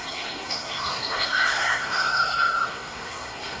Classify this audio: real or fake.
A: fake